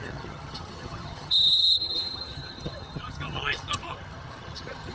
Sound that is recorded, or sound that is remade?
remade